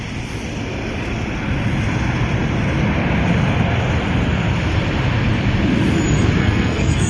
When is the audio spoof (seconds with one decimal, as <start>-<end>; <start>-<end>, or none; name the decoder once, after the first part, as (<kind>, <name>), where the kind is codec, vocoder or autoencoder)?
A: 6.4-7.1 (codec, SNAC)